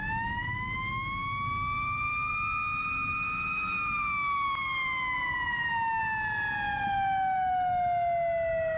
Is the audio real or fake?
real